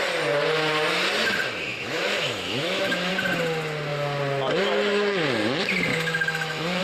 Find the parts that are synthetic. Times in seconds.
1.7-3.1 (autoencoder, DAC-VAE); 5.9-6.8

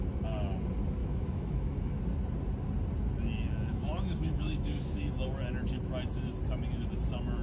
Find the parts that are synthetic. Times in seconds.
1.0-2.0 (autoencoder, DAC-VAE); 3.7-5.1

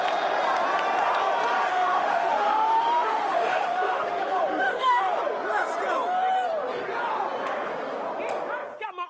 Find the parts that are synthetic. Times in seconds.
1.7-5.2 (autoencoder, DAC-VAE)

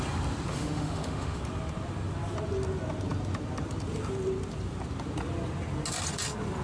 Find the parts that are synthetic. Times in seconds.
0.5-1.4 (autoencoder, DAC-VAE)